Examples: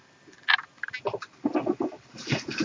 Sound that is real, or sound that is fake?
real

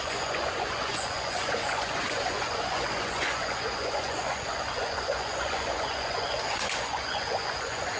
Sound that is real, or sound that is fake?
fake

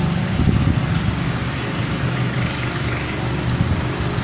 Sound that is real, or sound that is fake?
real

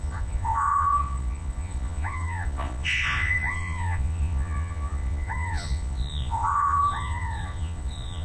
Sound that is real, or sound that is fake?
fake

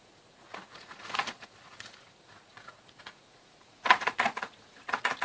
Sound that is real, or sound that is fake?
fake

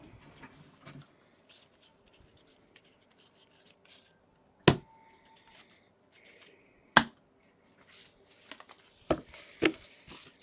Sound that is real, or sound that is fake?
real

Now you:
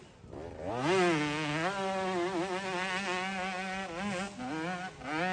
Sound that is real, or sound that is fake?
real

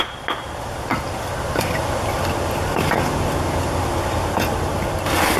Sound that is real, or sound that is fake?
real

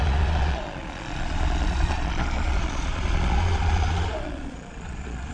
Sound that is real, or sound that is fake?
fake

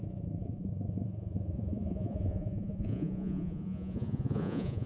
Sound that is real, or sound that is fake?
fake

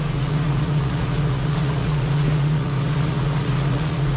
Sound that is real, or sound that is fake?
fake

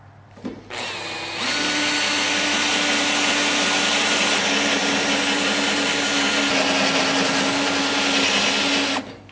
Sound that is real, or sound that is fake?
real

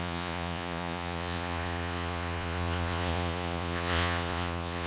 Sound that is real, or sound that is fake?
fake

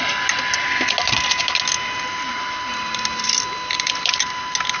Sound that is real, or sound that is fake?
real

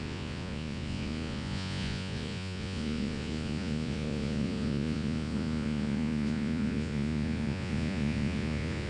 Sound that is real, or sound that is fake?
fake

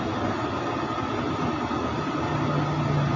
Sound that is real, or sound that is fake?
real